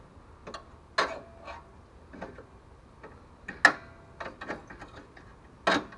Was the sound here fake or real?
real